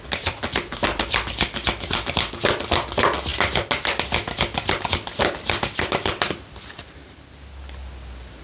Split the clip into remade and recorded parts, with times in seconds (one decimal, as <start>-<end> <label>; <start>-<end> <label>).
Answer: 0.0-8.4 recorded